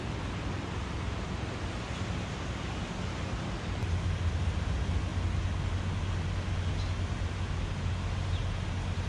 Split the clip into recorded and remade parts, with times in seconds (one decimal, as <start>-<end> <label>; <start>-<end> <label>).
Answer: 0.0-9.1 recorded